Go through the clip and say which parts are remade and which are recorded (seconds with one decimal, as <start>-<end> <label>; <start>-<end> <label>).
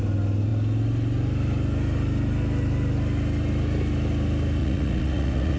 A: 0.0-4.6 recorded; 4.6-5.6 remade